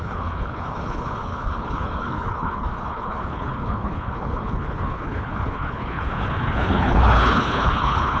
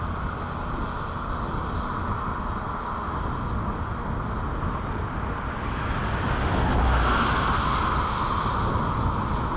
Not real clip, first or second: first